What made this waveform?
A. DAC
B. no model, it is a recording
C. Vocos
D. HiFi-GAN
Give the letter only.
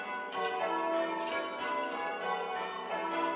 B